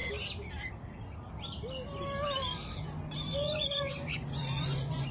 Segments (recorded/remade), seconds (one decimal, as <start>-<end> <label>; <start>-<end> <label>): 0.0-3.3 recorded; 3.3-5.1 remade